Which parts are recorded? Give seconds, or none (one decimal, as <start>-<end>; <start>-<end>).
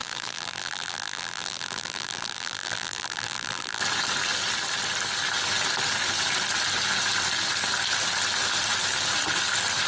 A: 3.8-9.9